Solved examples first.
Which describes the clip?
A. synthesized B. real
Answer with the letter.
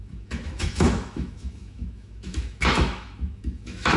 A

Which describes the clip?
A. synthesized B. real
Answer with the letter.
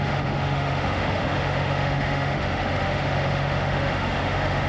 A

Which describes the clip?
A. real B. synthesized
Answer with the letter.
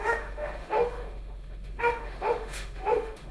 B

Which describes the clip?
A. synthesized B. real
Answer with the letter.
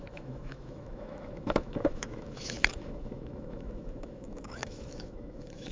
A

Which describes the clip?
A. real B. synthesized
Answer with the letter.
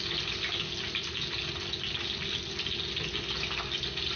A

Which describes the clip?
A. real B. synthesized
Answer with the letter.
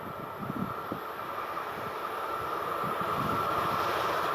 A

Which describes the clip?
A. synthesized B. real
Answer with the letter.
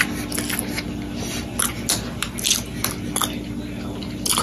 B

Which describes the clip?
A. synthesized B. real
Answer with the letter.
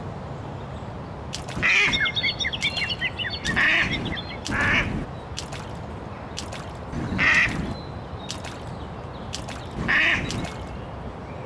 B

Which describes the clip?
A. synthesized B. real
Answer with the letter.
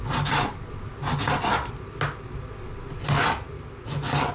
B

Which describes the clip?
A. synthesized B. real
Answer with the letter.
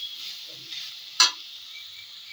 B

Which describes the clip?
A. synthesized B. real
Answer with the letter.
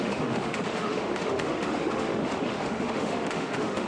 A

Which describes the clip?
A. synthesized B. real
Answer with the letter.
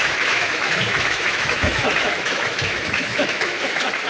A